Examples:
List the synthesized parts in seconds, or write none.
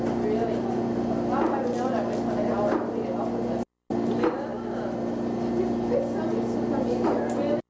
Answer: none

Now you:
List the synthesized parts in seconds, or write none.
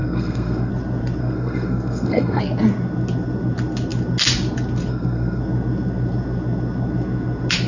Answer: 0.0-0.7 (codec, SNAC); 1.2-2.4; 4.9-5.4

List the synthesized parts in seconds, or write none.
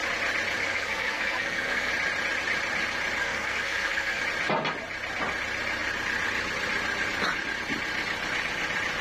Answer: 0.6-1.9 (codec, SNAC); 3.2-4.2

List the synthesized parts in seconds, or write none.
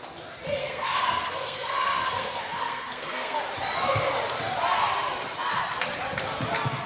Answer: 0.6-3.4 (codec, SNAC)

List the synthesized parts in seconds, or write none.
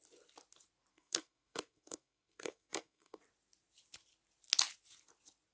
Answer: 0.9-3.2 (codec, SNAC)